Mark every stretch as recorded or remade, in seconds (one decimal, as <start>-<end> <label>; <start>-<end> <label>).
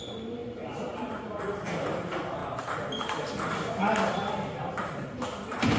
0.0-5.8 recorded